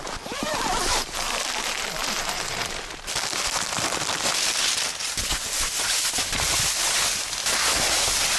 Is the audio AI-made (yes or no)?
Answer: no